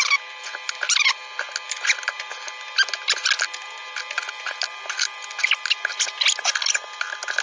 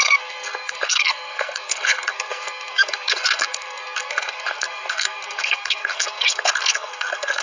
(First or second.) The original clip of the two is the first